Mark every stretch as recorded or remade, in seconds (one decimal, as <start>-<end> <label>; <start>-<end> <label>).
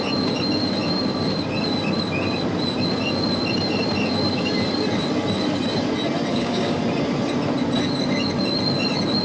0.0-6.3 recorded; 6.3-6.8 remade; 6.8-9.2 recorded